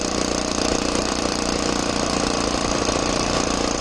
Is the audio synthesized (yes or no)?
yes